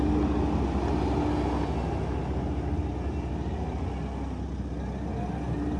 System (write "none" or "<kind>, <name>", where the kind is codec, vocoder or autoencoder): none